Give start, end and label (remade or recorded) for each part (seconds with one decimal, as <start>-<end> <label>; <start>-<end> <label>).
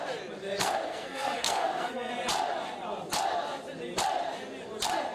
0.0-0.6 recorded; 0.6-2.1 remade; 2.1-5.1 recorded